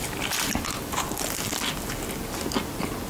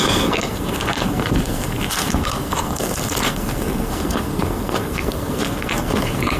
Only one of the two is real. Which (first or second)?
first